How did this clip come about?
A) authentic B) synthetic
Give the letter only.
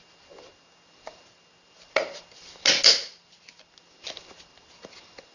A